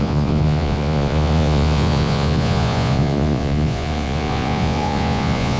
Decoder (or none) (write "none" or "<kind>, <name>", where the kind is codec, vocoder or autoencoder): vocoder, Vocos